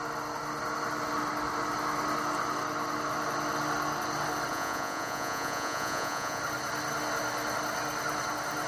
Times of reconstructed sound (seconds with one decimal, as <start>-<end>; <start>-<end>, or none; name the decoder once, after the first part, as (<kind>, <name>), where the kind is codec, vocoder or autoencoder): 4.5-6.4 (vocoder, Vocos)